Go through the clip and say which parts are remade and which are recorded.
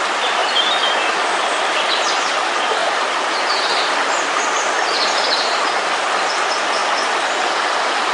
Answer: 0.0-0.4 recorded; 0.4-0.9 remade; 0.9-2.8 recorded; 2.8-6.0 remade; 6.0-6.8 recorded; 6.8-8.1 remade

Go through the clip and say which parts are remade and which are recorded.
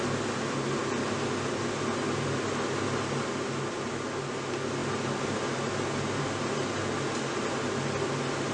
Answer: 0.0-8.5 recorded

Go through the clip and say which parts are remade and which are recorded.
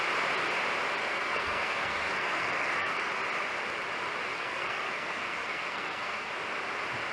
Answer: 0.0-1.0 recorded; 1.0-3.1 remade; 3.1-4.3 recorded; 4.3-6.3 remade; 6.3-7.1 recorded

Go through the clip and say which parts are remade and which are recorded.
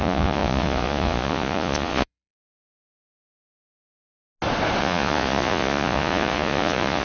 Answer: 0.0-3.2 remade; 3.2-4.8 recorded; 4.8-7.0 remade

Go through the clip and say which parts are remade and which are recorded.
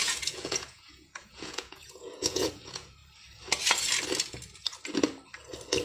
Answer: 0.0-3.0 remade; 3.0-5.8 recorded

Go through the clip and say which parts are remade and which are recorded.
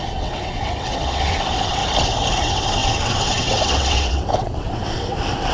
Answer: 0.0-1.8 remade; 1.8-2.4 recorded; 2.4-5.5 remade